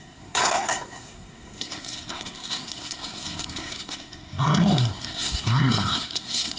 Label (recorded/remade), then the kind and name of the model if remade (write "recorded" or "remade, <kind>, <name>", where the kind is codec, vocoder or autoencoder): remade, codec, SNAC